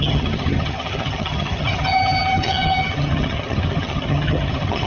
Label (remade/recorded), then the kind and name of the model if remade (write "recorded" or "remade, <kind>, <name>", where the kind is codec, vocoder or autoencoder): remade, vocoder, HiFi-GAN